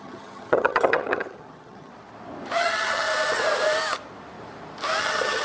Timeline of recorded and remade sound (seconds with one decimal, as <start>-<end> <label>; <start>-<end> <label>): 0.0-1.9 remade; 1.9-2.6 recorded; 2.6-3.1 remade; 3.1-5.0 recorded; 5.0-5.4 remade